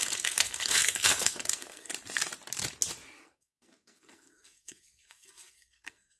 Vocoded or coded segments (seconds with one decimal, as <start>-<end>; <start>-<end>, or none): 0.0-1.9; 3.2-6.2